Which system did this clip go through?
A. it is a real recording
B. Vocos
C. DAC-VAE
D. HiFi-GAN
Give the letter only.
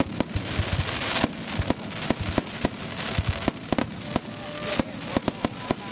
A